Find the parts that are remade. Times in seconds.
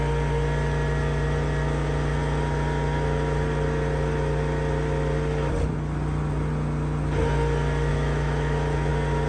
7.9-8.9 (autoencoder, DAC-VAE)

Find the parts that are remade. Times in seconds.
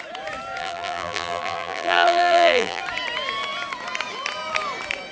0.6-2.8 (vocoder, BigVGAN v2)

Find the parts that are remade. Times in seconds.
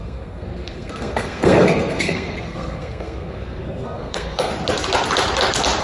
0.0-4.5 (codec, SNAC)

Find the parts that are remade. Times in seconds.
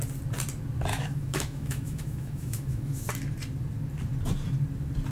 0.9-3.1 (autoencoder, DAC-VAE)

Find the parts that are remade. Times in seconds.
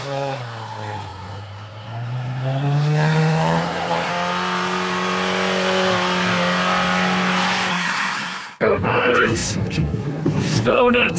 0.0-4.1 (codec, SNAC); 7.7-11.2